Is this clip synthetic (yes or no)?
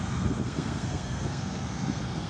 yes